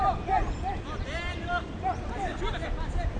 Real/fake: fake